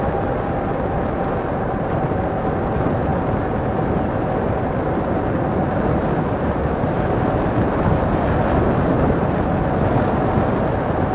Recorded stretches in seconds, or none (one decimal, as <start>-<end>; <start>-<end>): 0.0-11.1